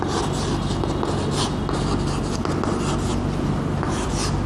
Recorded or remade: recorded